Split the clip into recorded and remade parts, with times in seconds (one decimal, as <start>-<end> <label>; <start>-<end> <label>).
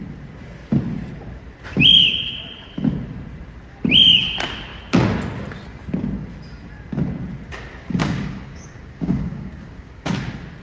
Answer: 0.0-8.0 recorded; 8.0-10.1 remade; 10.1-10.6 recorded